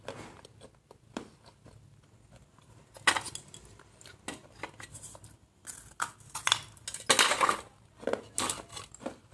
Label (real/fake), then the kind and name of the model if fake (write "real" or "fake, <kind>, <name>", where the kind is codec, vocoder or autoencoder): real